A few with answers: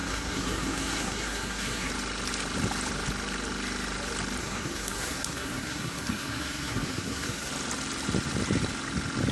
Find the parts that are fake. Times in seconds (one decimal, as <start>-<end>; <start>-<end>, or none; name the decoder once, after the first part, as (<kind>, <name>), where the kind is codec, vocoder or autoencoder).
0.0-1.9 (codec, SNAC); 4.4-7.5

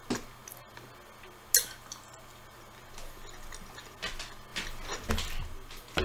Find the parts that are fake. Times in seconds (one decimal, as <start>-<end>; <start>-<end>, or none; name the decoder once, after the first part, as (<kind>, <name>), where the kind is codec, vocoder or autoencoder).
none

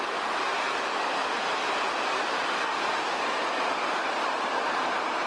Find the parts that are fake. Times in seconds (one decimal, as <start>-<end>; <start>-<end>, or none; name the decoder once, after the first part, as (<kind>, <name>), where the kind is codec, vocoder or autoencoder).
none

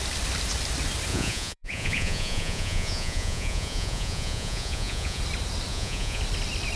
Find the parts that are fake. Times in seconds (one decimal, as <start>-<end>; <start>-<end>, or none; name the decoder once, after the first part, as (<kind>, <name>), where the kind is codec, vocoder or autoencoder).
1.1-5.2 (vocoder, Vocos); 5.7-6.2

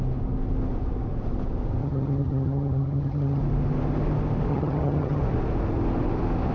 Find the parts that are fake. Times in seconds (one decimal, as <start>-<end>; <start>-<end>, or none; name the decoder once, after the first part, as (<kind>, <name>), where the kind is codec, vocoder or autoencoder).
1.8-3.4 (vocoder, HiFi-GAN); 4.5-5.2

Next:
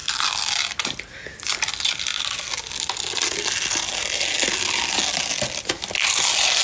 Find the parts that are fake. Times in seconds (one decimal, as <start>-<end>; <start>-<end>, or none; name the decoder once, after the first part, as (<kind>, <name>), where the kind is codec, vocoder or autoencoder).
none

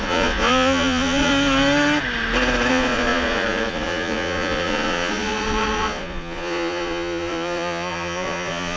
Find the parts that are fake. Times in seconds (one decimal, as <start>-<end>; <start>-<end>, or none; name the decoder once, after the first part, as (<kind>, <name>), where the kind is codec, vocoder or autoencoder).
0.0-1.3 (vocoder, Vocos); 2.7-8.8

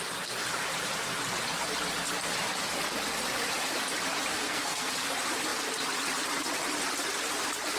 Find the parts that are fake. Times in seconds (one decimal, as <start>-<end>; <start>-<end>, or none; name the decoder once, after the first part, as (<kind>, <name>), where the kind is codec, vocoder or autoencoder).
4.3-4.9 (codec, SNAC)